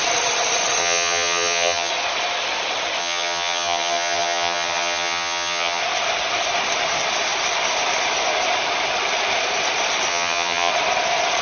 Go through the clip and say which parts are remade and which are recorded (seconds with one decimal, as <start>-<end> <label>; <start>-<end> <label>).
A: 0.0-0.8 recorded; 0.8-1.9 remade; 1.9-3.0 recorded; 3.0-5.8 remade; 5.8-10.1 recorded; 10.1-10.7 remade; 10.7-11.4 recorded